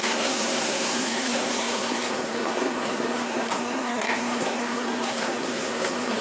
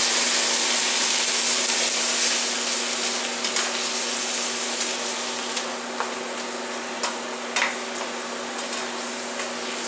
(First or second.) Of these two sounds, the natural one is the second